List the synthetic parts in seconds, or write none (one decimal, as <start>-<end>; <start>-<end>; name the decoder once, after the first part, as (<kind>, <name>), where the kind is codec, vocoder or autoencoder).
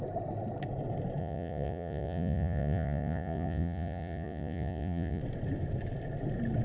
1.2-5.2 (vocoder, Vocos)